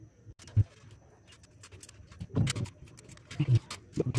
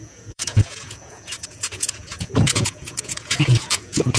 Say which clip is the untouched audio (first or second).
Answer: first